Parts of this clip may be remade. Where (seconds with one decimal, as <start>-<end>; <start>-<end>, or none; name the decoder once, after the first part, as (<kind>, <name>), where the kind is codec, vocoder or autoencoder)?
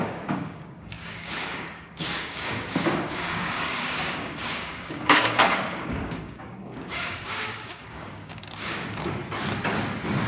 0.0-9.2 (codec, DAC)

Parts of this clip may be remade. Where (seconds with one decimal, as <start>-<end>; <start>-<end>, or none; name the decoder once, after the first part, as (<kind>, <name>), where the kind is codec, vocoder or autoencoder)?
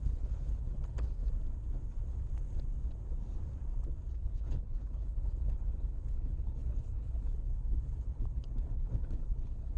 0.0-1.2 (codec, HILCodec); 4.1-9.8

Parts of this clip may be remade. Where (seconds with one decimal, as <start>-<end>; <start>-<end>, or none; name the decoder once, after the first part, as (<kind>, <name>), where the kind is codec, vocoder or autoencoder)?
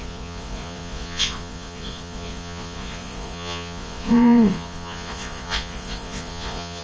0.0-6.8 (vocoder, Vocos)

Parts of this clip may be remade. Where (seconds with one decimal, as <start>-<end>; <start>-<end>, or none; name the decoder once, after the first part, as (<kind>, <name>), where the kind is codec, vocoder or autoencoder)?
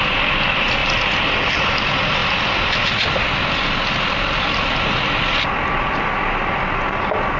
0.8-1.8 (vocoder, BigVGAN v2); 2.2-5.9